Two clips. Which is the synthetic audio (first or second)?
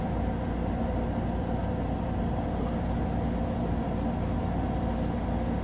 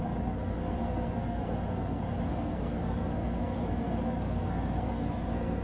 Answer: second